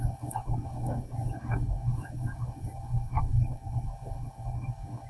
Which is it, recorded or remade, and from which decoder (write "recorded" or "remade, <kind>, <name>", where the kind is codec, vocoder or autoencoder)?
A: remade, codec, DAC